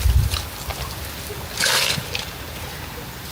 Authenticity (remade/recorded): recorded